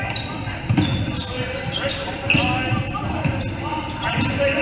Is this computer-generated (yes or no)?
no